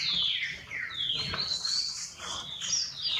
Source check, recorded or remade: recorded